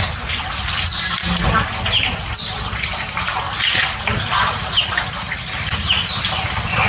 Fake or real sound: real